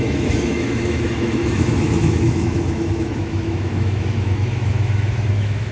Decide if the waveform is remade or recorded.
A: remade